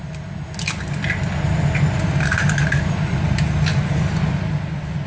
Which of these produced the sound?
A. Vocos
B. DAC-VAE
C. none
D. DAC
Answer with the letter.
C